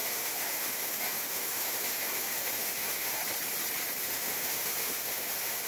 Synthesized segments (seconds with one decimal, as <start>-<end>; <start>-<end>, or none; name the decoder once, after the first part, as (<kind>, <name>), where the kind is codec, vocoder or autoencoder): 0.0-3.2 (autoencoder, DAC-VAE); 4.0-5.7